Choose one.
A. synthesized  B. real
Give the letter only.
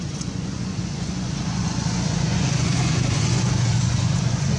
A